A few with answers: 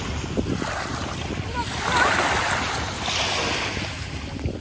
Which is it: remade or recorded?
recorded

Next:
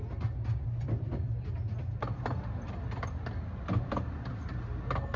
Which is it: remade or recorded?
recorded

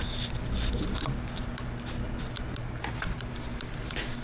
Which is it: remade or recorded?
recorded